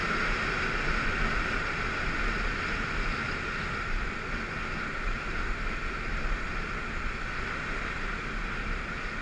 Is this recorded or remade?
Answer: recorded